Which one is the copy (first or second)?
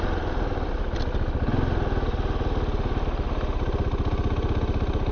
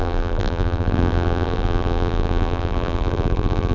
second